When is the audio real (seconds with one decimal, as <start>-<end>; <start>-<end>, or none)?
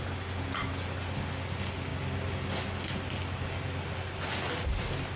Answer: 0.0-5.2